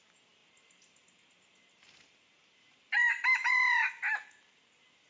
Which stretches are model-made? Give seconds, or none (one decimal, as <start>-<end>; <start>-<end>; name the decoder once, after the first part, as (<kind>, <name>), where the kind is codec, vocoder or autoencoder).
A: 0.4-3.5 (vocoder, BigVGAN v2)